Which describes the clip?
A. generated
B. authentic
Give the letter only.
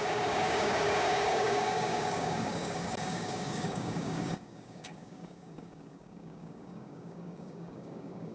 A